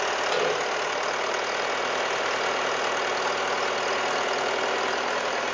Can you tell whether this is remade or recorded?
recorded